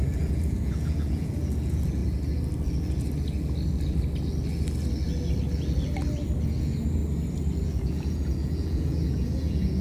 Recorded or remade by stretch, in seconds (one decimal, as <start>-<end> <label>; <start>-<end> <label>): 0.0-2.0 remade; 2.0-6.6 recorded; 6.6-7.0 remade; 7.0-7.6 recorded; 7.6-9.8 remade